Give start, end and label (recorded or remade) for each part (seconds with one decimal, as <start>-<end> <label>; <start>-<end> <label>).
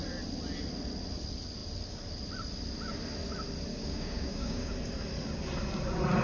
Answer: 0.0-3.7 recorded; 3.7-4.7 remade; 4.7-6.2 recorded